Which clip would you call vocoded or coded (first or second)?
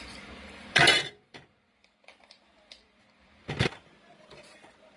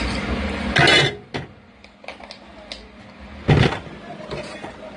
first